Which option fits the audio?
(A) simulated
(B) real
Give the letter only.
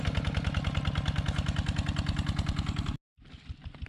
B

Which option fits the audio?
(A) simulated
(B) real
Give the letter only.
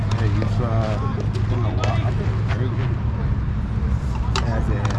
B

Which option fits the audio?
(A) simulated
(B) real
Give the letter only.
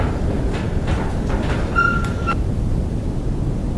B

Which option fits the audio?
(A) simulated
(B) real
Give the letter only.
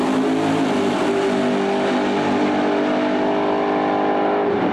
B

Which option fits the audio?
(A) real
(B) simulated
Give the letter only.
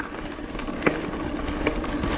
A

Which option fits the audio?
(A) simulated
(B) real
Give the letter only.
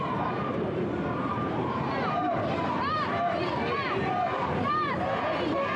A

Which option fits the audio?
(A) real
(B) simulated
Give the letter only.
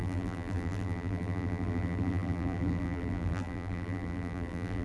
B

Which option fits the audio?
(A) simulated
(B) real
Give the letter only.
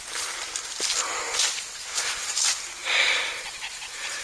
A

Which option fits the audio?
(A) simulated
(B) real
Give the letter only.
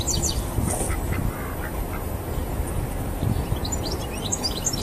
B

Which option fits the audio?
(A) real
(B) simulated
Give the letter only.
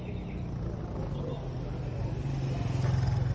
A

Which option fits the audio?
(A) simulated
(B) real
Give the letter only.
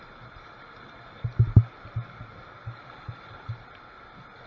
B